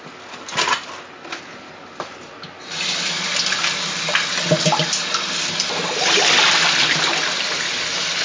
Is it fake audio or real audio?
real